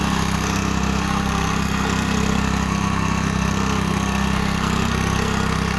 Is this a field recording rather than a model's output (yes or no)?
no